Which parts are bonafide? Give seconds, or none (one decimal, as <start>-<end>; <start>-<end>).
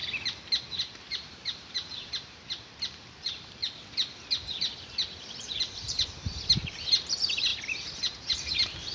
0.0-0.8; 3.6-5.6; 7.5-8.3